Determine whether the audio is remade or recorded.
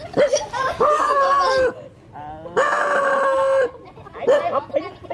recorded